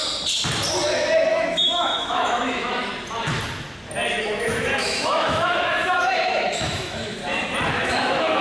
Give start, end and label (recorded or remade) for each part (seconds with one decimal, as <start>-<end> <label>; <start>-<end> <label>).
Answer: 0.0-1.3 recorded; 1.3-2.9 remade; 2.9-4.2 recorded; 4.2-7.2 remade; 7.2-7.7 recorded; 7.7-8.4 remade